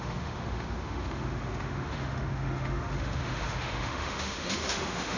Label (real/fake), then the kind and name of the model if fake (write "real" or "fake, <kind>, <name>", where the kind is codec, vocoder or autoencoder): fake, autoencoder, DAC-VAE